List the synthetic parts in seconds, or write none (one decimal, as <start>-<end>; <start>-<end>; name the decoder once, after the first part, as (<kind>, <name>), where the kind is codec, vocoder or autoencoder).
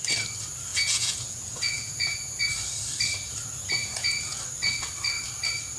0.7-2.4 (vocoder, Vocos); 3.8-4.4